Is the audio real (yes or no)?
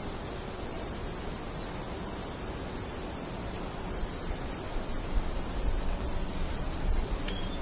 yes